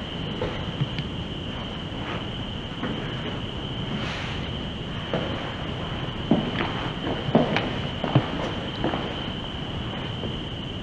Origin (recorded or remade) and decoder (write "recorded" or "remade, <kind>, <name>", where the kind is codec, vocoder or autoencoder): recorded